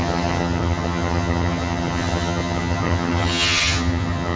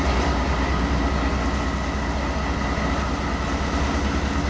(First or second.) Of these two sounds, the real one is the second